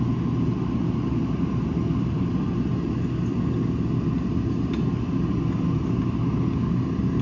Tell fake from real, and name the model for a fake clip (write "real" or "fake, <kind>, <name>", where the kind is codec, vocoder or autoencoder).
real